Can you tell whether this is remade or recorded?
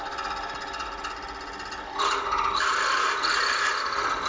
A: recorded